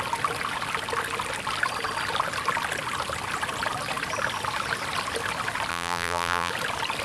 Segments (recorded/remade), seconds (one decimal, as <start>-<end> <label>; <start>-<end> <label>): 0.0-5.7 recorded; 5.7-6.5 remade; 6.5-7.0 recorded